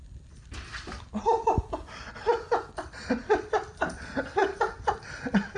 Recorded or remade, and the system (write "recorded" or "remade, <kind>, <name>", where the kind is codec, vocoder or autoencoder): recorded